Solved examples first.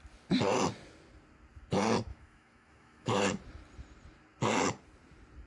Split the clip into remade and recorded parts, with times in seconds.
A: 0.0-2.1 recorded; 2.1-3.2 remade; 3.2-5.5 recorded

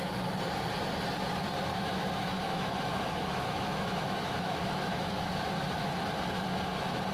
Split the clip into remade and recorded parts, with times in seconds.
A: 0.0-1.7 recorded; 1.7-6.0 remade; 6.0-7.1 recorded

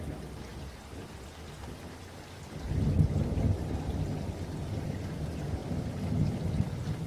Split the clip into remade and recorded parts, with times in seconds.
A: 0.0-7.1 recorded

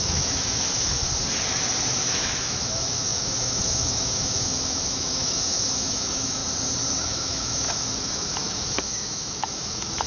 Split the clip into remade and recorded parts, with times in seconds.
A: 0.0-1.0 remade; 1.0-2.0 recorded; 2.0-6.4 remade; 6.4-7.0 recorded; 7.0-10.1 remade

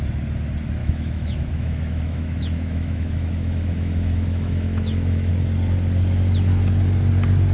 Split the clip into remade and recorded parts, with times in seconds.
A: 0.0-0.8 recorded; 0.8-5.3 remade; 5.3-7.5 recorded

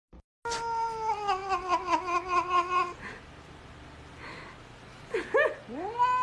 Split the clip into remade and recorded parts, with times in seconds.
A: 0.0-6.2 recorded